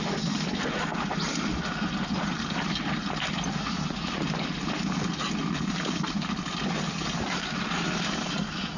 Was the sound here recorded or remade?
recorded